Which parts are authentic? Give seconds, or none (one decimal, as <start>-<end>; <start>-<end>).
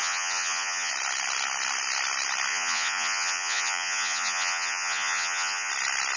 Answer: 0.9-2.5; 5.7-6.2